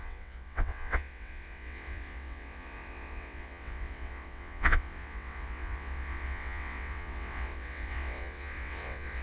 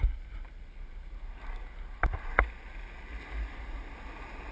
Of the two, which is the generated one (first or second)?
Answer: first